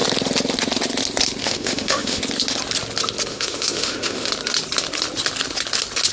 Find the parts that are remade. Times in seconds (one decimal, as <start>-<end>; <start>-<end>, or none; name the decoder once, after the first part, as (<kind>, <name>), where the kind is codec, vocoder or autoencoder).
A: 1.4-2.2 (autoencoder, DAC-VAE); 3.3-4.3